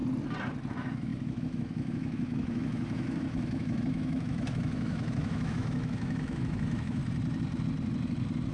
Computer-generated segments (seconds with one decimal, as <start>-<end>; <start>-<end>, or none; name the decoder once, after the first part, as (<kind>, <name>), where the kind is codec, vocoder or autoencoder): 0.7-7.0 (autoencoder, DAC-VAE)